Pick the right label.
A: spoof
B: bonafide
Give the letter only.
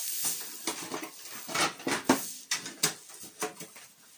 B